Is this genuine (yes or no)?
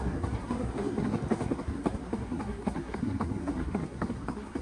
no